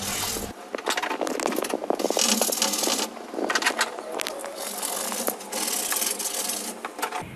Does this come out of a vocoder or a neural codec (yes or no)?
no